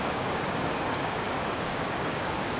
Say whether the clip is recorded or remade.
remade